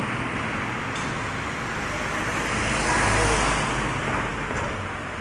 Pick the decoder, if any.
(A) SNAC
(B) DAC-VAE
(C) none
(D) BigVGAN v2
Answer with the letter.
C